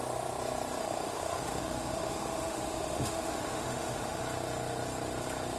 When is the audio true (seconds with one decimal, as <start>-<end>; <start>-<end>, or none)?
0.0-0.8; 4.2-5.6